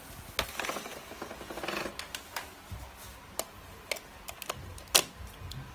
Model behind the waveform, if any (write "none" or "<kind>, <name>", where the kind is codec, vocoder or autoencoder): none